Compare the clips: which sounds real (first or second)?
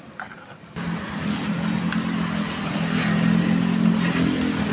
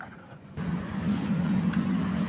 first